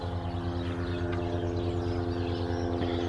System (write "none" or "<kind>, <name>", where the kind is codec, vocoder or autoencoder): none